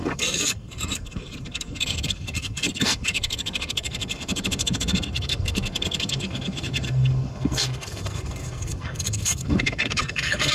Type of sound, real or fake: fake